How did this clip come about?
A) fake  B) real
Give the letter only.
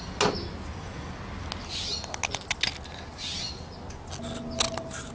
B